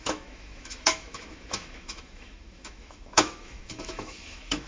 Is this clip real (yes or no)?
no